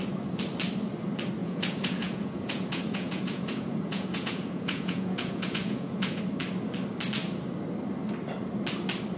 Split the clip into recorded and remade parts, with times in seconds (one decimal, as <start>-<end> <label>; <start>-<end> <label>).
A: 0.0-1.4 recorded; 1.4-6.2 remade; 6.2-9.2 recorded